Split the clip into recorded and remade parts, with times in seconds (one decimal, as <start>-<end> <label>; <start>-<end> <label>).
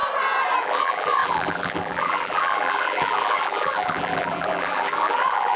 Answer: 0.0-0.6 recorded; 0.6-5.6 remade